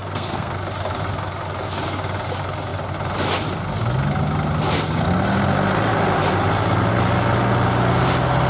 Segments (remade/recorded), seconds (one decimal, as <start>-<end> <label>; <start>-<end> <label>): 0.0-0.5 remade; 0.5-8.5 recorded